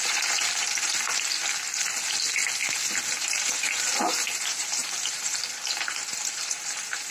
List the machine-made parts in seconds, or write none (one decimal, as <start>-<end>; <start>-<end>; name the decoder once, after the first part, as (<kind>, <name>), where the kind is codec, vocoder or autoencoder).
0.0-1.4 (vocoder, BigVGAN v2); 3.1-7.1